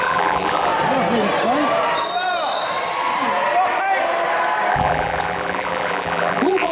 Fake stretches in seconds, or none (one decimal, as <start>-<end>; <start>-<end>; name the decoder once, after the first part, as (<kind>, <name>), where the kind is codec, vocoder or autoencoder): 0.0-0.7 (vocoder, BigVGAN v2); 4.7-6.7

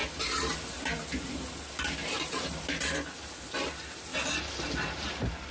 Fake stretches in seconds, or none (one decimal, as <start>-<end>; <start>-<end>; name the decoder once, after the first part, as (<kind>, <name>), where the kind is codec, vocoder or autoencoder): none

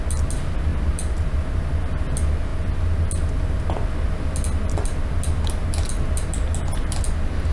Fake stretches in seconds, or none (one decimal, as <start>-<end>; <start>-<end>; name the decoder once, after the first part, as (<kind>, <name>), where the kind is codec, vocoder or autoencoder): none

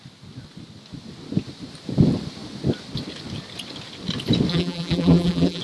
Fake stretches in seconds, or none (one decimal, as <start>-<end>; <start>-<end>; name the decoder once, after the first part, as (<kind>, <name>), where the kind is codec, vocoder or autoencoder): 4.5-5.6 (vocoder, BigVGAN v2)

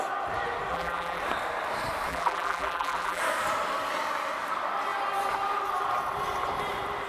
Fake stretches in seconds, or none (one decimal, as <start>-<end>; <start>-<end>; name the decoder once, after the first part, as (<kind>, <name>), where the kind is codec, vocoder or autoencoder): 0.7-1.2 (vocoder, BigVGAN v2); 2.1-3.2

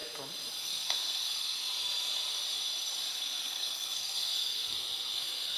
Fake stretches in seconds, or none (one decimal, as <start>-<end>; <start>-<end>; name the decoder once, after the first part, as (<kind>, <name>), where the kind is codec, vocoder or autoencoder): 0.6-1.6 (codec, SNAC); 3.1-5.6

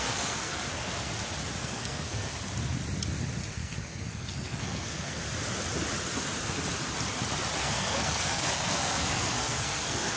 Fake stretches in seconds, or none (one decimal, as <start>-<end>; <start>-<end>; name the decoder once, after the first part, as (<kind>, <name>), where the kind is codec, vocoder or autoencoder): 0.0-1.1 (codec, SNAC); 1.6-2.3; 3.5-5.2; 7.6-10.2

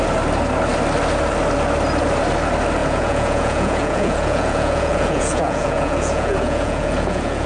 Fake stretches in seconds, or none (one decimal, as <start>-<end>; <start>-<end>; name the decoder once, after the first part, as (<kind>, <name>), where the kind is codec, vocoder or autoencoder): 2.8-7.5 (vocoder, Vocos)